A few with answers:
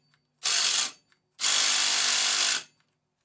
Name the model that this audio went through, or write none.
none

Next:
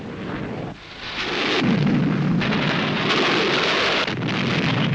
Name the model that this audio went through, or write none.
none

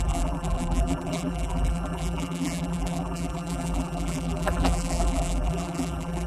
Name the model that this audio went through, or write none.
vocoder, BigVGAN v2